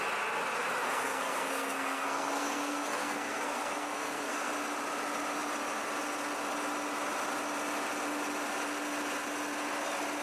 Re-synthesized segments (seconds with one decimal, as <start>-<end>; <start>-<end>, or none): 0.8-4.5